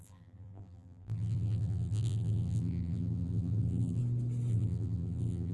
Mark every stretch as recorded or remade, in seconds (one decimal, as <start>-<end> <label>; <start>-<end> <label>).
0.0-4.0 remade; 4.0-4.5 recorded; 4.5-5.5 remade